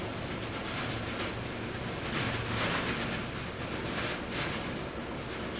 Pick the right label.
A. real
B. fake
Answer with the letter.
A